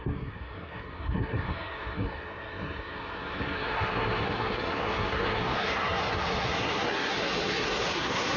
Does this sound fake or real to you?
fake